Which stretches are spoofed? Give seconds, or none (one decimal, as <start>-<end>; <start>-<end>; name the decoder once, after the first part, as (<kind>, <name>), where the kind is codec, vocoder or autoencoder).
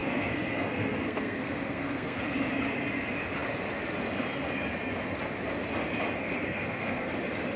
0.0-2.2 (codec, SNAC); 6.2-7.1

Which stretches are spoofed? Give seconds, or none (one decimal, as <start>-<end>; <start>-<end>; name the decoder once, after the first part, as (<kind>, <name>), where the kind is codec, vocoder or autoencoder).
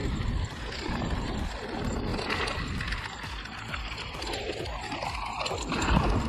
none